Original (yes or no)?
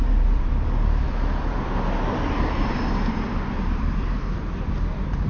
no